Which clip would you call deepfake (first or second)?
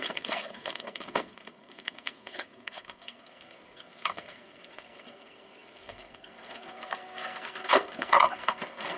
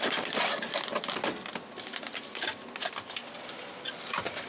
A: first